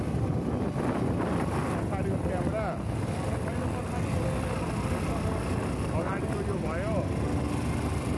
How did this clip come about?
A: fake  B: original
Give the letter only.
B